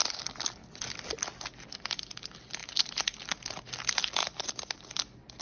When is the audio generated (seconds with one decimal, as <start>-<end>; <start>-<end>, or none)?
none